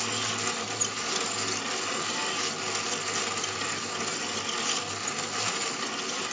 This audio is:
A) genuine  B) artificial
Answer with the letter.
A